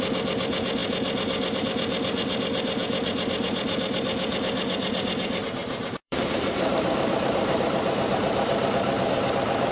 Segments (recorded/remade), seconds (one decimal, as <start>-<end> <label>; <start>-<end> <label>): 0.0-5.6 recorded; 5.6-9.1 remade; 9.1-9.7 recorded